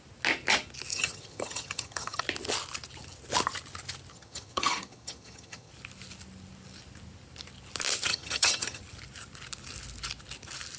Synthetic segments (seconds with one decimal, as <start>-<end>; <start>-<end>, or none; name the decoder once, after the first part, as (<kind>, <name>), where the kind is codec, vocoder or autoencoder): 0.9-2.2 (vocoder, HiFi-GAN); 4.1-5.7; 8.1-8.8

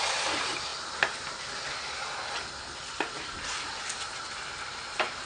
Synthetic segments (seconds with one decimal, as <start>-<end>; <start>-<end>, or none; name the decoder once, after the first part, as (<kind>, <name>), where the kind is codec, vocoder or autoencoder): 0.0-0.7 (vocoder, BigVGAN v2); 3.1-5.2

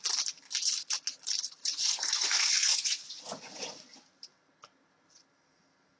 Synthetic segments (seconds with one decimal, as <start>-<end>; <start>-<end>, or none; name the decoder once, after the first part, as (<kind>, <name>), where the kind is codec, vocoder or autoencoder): 1.6-3.9 (vocoder, Vocos)

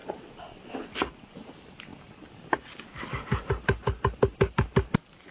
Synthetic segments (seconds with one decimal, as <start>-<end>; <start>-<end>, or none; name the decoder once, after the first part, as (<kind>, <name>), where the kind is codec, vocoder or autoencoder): none